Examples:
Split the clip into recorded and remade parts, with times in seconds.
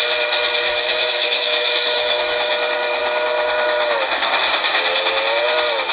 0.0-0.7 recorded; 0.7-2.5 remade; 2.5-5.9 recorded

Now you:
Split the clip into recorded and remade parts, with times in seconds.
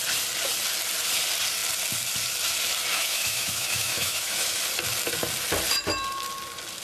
0.0-2.9 recorded; 2.9-4.6 remade; 4.6-6.8 recorded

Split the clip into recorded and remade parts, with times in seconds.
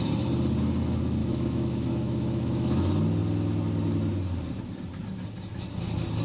0.0-1.2 recorded; 1.2-2.8 remade; 2.8-6.2 recorded